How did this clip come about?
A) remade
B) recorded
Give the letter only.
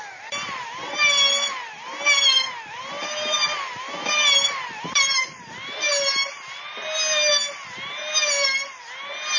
B